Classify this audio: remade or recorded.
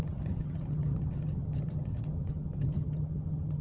remade